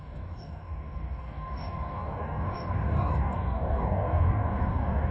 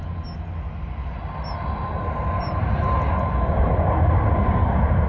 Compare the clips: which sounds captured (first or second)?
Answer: second